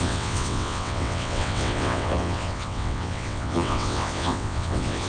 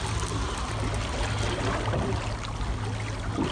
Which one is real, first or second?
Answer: second